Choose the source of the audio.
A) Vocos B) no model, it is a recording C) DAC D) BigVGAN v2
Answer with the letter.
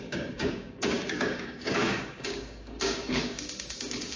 C